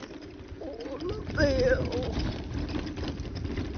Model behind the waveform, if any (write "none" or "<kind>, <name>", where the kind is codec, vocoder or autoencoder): none